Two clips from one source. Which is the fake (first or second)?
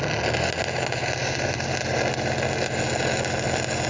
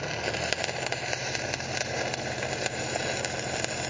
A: second